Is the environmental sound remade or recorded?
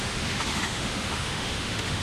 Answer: remade